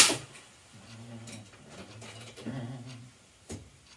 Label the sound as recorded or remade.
recorded